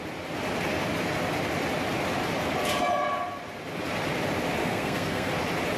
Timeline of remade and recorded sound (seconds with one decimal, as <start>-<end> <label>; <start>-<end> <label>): 0.0-4.6 recorded; 4.6-5.3 remade; 5.3-5.8 recorded